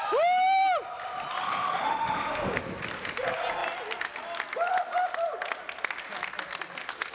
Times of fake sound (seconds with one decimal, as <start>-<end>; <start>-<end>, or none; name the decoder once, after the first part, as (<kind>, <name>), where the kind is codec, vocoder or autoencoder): 1.4-2.6 (autoencoder, DAC-VAE)